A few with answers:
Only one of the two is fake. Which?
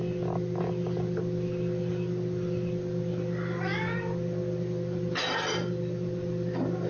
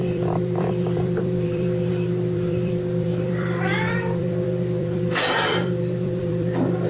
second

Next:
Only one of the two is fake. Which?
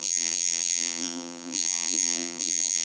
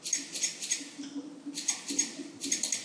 first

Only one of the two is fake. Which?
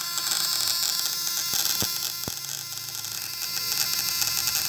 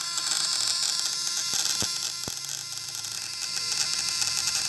second